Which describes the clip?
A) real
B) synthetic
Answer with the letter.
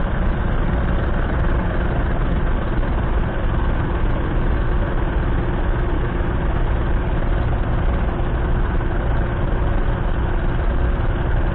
A